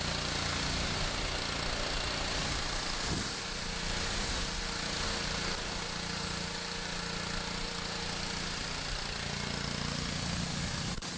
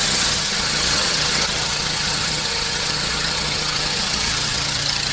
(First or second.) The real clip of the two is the first